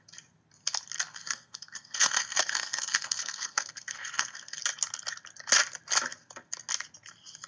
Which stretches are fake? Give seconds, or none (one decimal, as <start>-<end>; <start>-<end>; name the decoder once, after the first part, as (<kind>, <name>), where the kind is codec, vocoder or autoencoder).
1.1-4.6 (codec, SNAC)

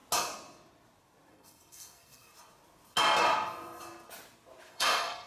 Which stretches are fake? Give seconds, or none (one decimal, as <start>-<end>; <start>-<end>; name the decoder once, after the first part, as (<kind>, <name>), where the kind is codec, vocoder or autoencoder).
1.3-2.3 (codec, SNAC); 4.7-5.3

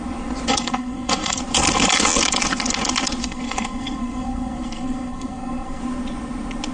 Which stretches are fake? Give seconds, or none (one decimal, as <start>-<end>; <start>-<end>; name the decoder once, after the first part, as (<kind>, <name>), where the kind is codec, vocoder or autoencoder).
0.5-1.4 (codec, SNAC); 3.2-5.8

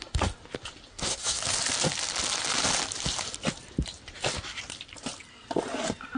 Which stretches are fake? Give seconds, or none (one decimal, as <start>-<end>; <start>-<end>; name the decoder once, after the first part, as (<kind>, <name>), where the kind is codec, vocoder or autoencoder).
0.9-1.4 (codec, SNAC)

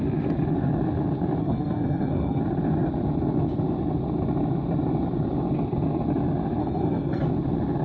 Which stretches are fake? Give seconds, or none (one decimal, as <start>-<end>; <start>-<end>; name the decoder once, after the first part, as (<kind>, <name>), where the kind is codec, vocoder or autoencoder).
1.4-2.4 (codec, SNAC); 6.6-7.2